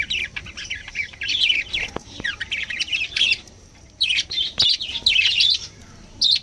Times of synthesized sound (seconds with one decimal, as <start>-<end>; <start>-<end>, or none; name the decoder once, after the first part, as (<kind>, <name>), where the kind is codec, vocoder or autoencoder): 0.0-6.4 (vocoder, BigVGAN v2)